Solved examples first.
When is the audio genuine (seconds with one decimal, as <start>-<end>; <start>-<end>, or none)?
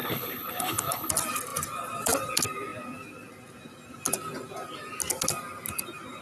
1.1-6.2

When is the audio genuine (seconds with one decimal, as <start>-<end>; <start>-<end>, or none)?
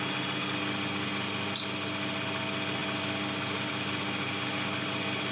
0.0-5.3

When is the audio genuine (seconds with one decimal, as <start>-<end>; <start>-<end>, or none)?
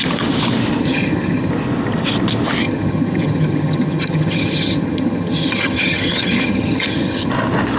0.0-0.8; 1.5-2.6; 7.3-7.8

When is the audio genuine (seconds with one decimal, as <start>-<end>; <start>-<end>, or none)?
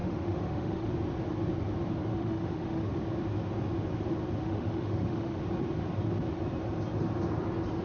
0.9-2.1; 2.9-4.4; 5.4-7.8